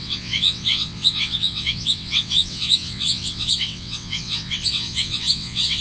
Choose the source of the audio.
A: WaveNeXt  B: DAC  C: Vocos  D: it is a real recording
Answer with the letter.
A